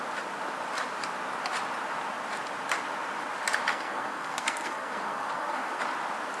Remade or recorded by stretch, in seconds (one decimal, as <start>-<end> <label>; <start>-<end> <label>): 0.0-3.7 recorded; 3.7-5.8 remade; 5.8-6.4 recorded